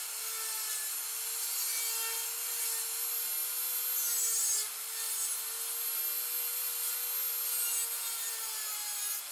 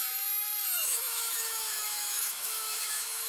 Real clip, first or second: first